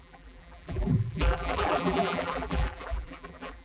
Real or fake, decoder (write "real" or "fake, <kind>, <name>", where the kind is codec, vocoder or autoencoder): fake, vocoder, BigVGAN v2